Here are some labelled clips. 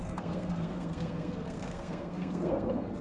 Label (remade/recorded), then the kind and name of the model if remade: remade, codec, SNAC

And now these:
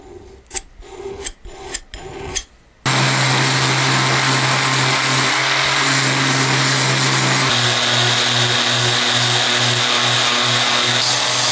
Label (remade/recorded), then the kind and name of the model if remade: recorded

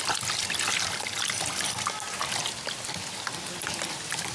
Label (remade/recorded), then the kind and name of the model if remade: recorded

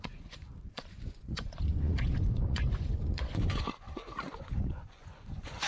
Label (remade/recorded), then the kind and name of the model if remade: remade, vocoder, Vocos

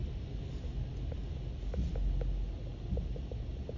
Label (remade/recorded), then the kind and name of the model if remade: recorded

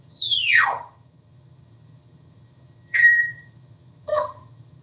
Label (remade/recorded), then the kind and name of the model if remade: remade, vocoder, HiFi-GAN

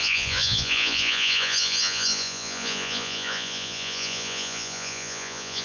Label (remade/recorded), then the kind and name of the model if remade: remade, vocoder, Vocos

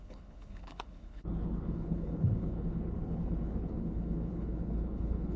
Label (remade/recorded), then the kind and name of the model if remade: remade, codec, HILCodec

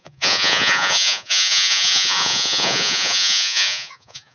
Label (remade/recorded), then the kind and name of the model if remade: remade, vocoder, Vocos